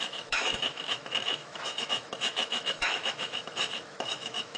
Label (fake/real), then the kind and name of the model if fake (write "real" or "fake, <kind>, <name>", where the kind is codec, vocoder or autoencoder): fake, autoencoder, DAC-VAE